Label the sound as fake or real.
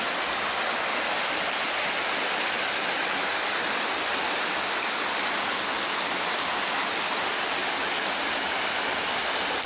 real